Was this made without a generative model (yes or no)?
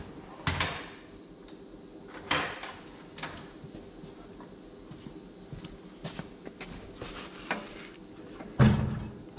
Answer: yes